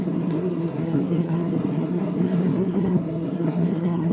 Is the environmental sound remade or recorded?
remade